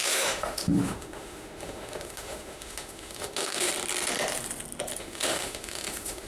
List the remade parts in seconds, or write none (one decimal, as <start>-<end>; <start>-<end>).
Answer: 0.0-3.7; 5.0-6.3